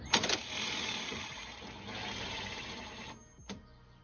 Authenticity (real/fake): real